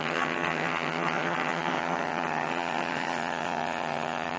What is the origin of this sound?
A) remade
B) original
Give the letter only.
A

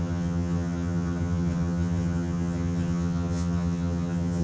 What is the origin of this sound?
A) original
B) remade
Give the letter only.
B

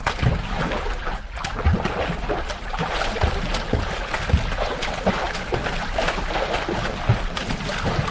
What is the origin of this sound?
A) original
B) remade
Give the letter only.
A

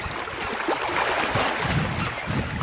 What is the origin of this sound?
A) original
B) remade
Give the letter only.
A